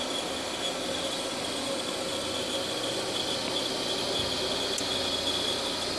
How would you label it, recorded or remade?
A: recorded